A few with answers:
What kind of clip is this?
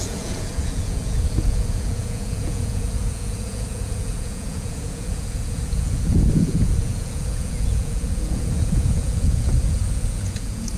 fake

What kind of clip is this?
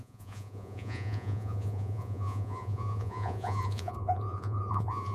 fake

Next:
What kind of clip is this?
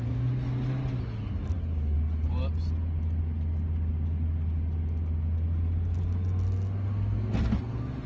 real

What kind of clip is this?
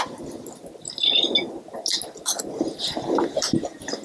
real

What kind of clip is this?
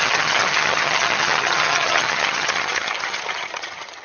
fake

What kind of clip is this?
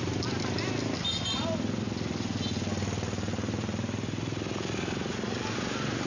real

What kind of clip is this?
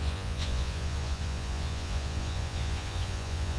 fake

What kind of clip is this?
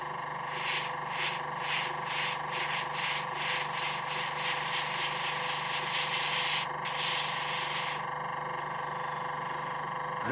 real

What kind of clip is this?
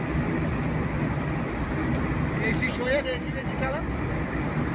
real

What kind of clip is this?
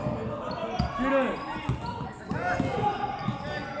real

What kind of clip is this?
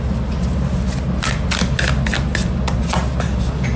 real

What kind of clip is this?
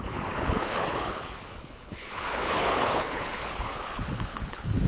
fake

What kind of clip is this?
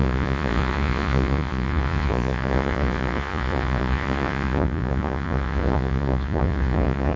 fake